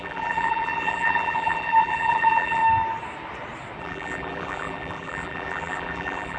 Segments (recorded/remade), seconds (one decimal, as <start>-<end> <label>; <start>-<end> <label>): 0.0-2.6 remade; 2.6-3.8 recorded; 3.8-6.4 remade